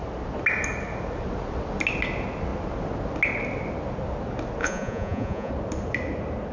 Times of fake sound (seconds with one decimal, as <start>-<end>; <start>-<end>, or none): 4.6-5.5